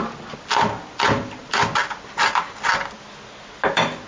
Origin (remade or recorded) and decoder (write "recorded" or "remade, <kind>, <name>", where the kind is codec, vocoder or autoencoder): recorded